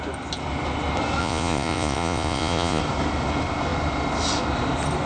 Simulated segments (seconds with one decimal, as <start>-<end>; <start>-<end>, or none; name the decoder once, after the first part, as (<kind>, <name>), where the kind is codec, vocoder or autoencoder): 1.2-2.8 (vocoder, Vocos)